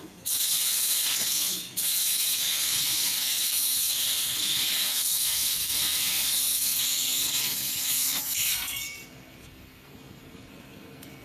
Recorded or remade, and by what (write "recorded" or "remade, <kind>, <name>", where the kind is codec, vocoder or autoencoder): remade, codec, SNAC